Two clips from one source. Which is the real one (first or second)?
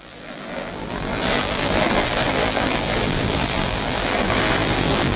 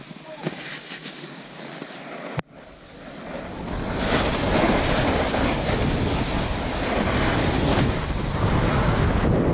second